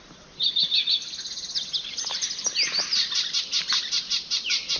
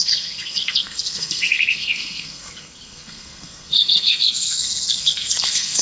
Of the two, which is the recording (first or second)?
first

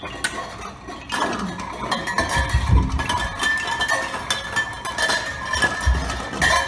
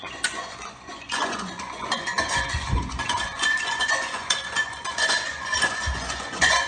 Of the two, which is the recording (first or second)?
first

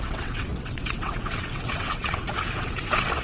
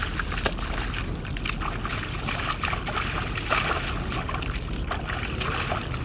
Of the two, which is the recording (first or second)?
second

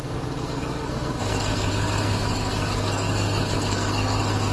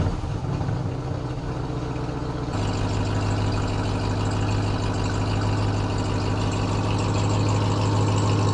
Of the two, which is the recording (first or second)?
second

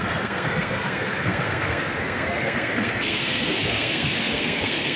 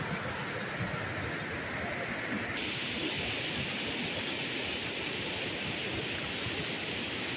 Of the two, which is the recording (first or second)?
second